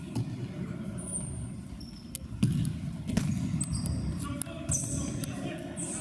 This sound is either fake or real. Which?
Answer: real